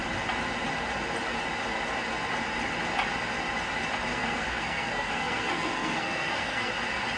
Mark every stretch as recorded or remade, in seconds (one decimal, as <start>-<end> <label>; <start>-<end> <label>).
0.0-4.1 recorded; 4.1-6.7 remade; 6.7-7.2 recorded

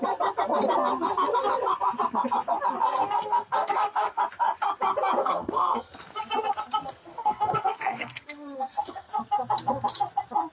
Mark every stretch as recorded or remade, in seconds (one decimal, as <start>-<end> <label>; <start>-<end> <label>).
0.0-2.8 recorded; 2.8-4.2 remade; 4.2-5.2 recorded; 5.2-5.9 remade; 5.9-6.8 recorded; 6.8-9.1 remade; 9.1-10.5 recorded

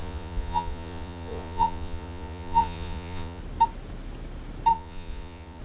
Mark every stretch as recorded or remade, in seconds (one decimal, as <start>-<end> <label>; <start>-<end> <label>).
0.0-3.4 remade; 3.4-4.7 recorded; 4.7-5.6 remade

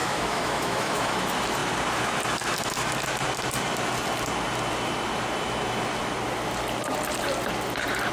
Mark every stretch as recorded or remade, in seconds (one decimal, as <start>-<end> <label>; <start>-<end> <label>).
0.0-1.2 remade; 1.2-8.1 recorded